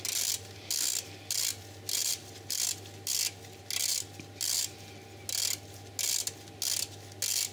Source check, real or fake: real